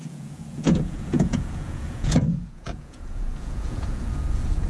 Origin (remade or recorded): remade